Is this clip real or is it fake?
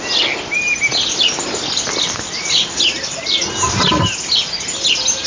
real